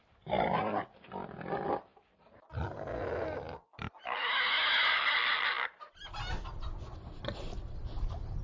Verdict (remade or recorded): recorded